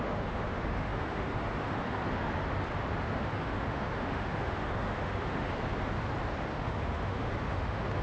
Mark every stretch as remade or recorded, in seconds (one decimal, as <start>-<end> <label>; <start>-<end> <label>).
0.0-2.0 remade; 2.0-3.0 recorded; 3.0-5.5 remade; 5.5-6.5 recorded; 6.5-8.0 remade